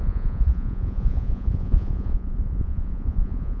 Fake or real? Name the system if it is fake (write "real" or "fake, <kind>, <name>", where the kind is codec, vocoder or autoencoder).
fake, vocoder, Vocos